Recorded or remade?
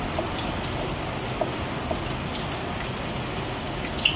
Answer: recorded